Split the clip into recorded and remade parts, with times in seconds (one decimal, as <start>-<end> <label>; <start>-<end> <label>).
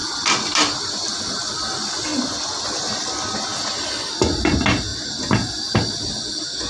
0.0-1.2 remade; 1.2-6.7 recorded